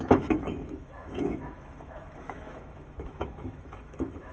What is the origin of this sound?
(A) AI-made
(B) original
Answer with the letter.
A